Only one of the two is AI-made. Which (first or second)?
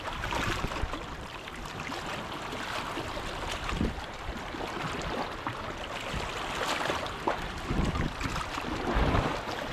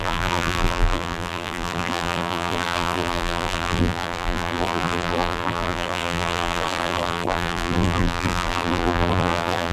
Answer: second